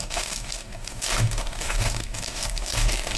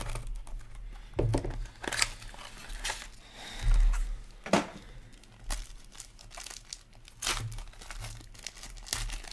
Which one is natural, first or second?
second